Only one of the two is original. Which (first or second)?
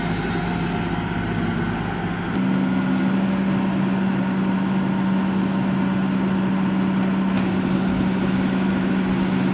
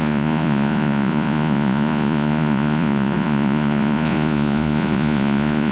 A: first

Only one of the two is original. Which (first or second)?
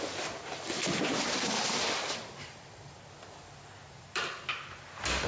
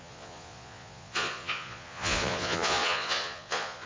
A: first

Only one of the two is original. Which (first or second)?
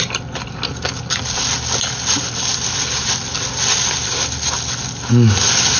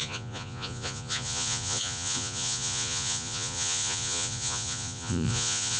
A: first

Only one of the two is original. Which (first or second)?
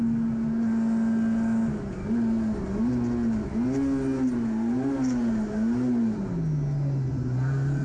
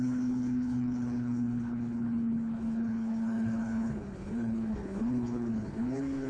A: first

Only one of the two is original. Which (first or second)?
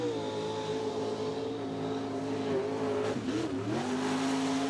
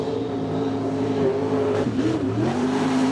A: first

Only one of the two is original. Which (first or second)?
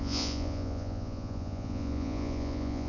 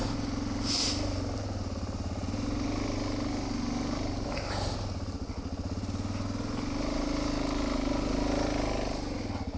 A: second